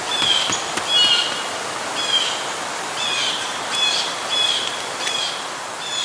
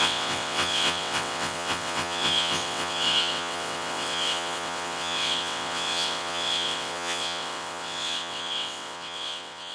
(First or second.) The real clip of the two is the first